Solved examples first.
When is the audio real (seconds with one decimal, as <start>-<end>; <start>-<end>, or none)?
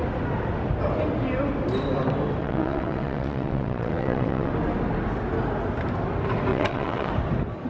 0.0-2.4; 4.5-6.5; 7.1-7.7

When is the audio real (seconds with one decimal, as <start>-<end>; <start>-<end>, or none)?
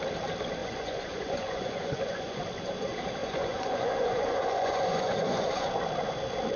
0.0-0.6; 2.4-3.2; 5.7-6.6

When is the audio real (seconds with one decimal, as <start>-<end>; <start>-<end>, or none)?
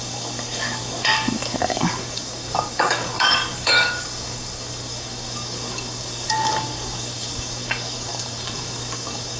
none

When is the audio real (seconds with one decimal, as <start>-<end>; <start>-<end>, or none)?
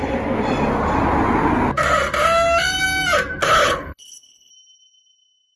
0.0-3.4; 4.5-5.6